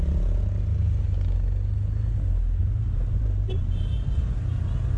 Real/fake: real